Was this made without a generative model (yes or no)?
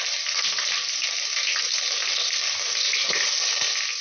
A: yes